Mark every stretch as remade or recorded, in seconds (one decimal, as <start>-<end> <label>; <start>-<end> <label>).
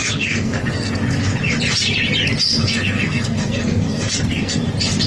0.0-1.0 remade; 1.0-2.6 recorded; 2.6-4.6 remade; 4.6-5.1 recorded